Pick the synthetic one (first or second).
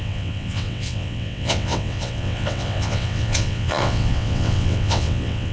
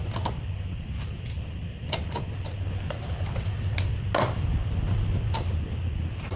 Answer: first